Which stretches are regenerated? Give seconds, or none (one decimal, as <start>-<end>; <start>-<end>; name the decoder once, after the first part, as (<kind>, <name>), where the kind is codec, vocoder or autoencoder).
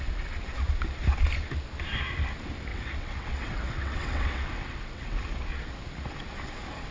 2.7-5.2 (vocoder, WaveNeXt)